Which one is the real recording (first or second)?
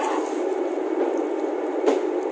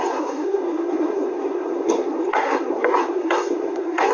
first